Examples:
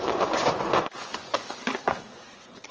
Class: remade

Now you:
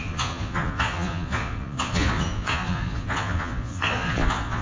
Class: remade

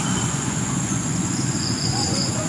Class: remade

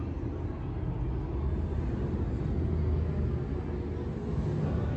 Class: recorded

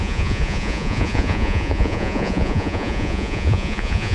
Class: remade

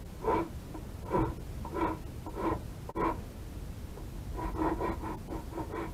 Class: recorded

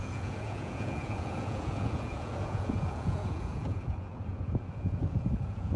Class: remade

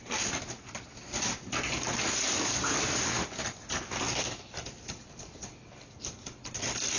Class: recorded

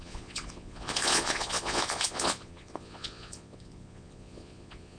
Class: remade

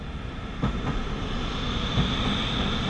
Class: recorded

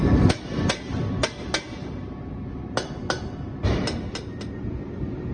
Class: recorded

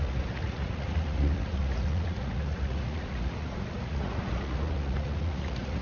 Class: remade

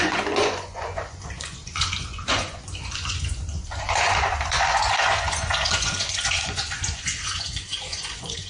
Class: remade